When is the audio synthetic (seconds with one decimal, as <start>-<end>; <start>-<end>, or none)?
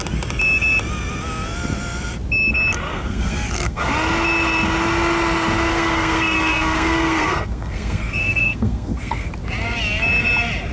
2.9-3.9; 5.7-9.3